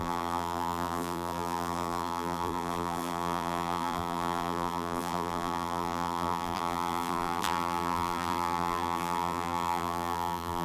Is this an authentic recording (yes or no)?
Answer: no